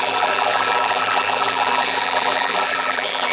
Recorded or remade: remade